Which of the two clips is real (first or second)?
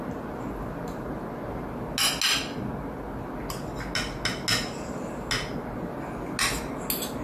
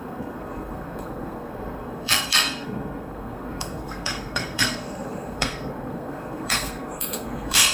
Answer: first